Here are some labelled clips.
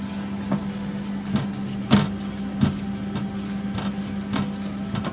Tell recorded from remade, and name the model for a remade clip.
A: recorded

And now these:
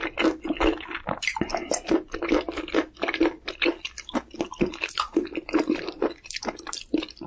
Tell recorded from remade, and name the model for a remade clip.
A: recorded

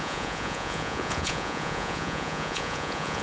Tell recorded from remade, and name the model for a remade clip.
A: remade, vocoder, Vocos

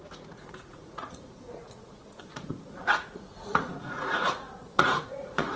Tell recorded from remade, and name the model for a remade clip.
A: remade, vocoder, Vocos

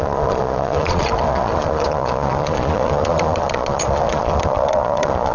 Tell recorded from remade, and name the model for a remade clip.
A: remade, vocoder, Vocos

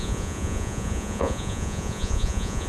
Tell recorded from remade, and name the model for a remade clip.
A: remade, vocoder, Vocos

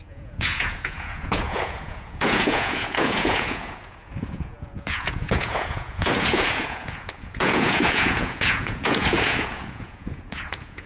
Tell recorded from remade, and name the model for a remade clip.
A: remade, vocoder, Vocos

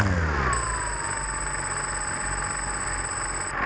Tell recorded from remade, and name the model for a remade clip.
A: recorded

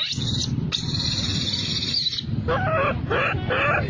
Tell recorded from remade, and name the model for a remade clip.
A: recorded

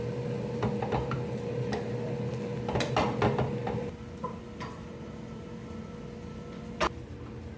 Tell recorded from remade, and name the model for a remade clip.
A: recorded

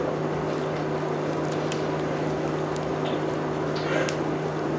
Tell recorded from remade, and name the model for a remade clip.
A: recorded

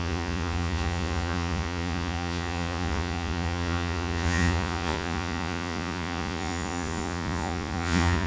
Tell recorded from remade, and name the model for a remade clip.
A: remade, vocoder, Vocos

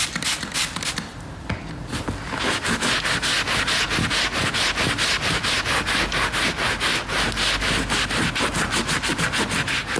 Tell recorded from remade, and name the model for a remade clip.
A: recorded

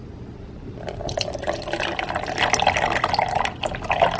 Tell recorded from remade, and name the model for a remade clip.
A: recorded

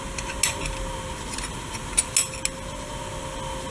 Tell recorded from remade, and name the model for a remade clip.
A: recorded